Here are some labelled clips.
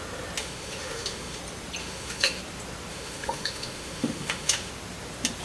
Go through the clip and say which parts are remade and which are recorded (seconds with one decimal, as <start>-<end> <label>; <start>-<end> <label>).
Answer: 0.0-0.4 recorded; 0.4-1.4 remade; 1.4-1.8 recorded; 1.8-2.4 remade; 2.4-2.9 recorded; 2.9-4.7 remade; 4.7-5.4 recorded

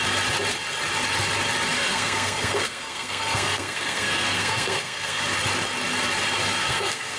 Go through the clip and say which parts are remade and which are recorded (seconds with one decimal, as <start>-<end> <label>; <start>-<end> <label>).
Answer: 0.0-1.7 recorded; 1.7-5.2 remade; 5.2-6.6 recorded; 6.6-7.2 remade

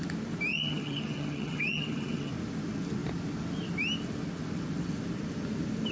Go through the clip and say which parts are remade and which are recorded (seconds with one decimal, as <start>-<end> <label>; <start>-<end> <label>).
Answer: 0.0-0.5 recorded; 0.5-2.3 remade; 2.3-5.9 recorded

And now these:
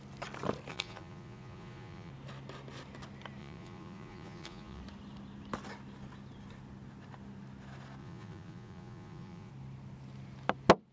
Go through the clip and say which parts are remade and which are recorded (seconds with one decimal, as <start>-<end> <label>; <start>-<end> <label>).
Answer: 0.0-0.7 recorded; 0.7-2.1 remade; 2.1-3.4 recorded; 3.4-4.8 remade; 4.8-8.0 recorded; 8.0-9.5 remade; 9.5-10.9 recorded